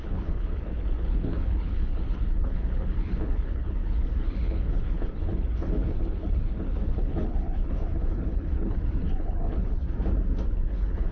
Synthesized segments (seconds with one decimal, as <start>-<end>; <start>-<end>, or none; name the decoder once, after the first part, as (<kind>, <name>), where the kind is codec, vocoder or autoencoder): 0.0-9.8 (codec, HILCodec); 10.5-11.1